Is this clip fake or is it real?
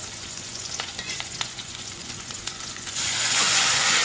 fake